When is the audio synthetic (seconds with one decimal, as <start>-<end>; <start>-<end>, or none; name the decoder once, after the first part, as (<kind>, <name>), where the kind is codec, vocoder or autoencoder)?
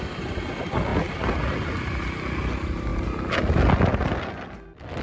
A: none